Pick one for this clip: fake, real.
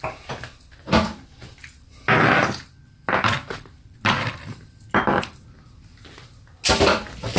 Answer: real